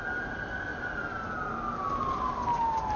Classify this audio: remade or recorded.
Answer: recorded